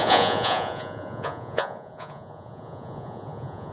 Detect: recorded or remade remade